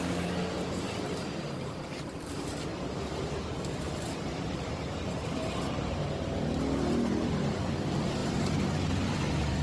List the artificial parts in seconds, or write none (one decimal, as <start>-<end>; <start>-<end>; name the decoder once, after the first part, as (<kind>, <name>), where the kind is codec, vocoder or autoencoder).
2.7-6.0 (vocoder, BigVGAN v2)